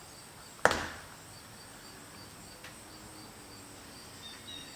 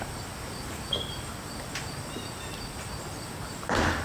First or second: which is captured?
first